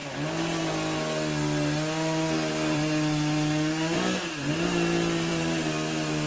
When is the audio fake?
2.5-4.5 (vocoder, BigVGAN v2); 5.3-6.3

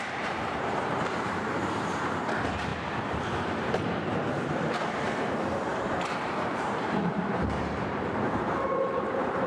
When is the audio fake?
0.0-2.7 (vocoder, BigVGAN v2); 4.6-9.5

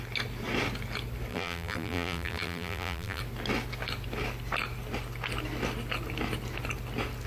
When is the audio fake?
1.3-3.2 (vocoder, BigVGAN v2)

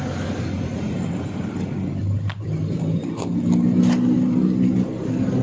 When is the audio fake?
0.7-3.2 (vocoder, BigVGAN v2)

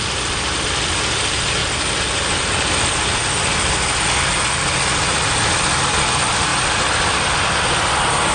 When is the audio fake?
0.0-1.6 (vocoder, BigVGAN v2); 2.7-3.2; 5.2-6.5